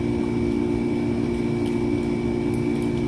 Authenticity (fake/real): real